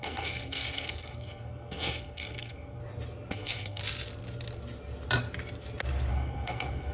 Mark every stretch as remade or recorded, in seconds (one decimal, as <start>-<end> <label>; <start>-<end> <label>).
0.0-2.8 remade; 2.8-3.3 recorded; 3.3-3.8 remade; 3.8-6.1 recorded; 6.1-6.9 remade